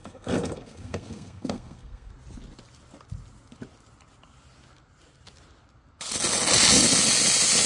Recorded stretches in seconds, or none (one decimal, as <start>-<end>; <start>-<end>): 2.1-7.7